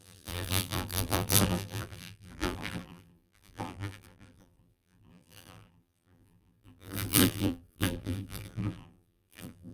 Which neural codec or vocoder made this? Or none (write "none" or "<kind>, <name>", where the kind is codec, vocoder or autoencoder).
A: vocoder, BigVGAN v2